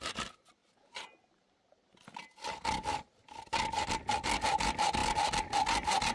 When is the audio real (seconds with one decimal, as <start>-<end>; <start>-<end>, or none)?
0.0-6.1